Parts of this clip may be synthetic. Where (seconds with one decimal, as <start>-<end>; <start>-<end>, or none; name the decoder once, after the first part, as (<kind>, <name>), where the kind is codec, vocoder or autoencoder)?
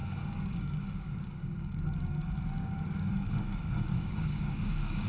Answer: 0.0-5.1 (codec, DAC)